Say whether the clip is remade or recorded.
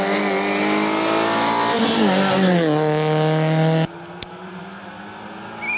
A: recorded